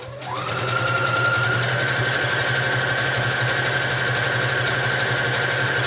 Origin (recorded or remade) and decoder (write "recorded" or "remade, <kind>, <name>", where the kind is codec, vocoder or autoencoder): recorded